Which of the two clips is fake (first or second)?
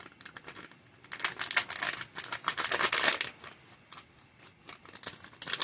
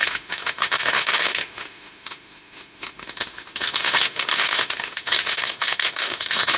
second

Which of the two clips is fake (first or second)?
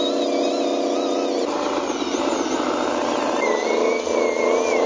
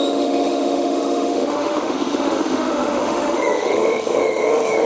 second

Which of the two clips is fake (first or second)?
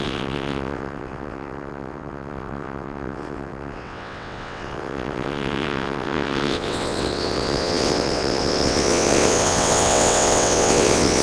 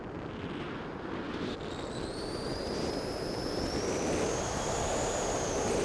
first